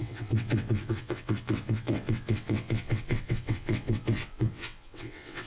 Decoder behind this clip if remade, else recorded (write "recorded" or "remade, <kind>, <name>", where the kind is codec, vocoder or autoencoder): remade, vocoder, WaveNeXt